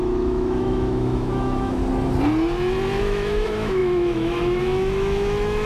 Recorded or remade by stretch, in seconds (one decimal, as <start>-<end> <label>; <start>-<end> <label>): 0.0-1.8 remade; 1.8-3.0 recorded; 3.0-5.6 remade